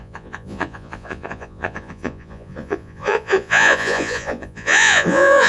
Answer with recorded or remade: remade